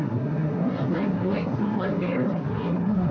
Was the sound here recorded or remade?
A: remade